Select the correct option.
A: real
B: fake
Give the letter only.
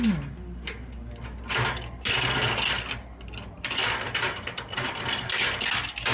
A